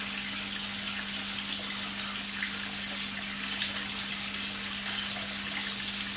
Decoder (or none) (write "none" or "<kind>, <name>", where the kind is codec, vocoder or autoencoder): none